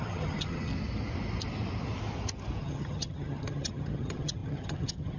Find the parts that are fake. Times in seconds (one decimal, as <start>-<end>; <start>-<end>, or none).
0.0-0.7; 2.6-5.2